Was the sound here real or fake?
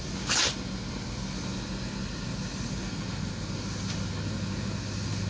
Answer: real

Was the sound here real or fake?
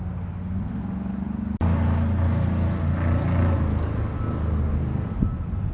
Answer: real